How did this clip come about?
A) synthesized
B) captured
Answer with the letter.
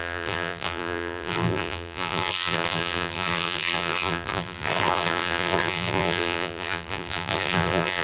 A